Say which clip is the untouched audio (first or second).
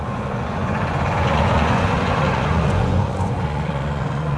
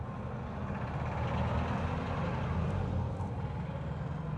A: second